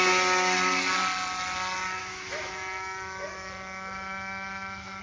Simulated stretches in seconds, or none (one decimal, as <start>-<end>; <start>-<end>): 2.0-5.0